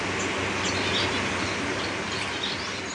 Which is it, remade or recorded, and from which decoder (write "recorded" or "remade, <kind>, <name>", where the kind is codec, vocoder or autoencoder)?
recorded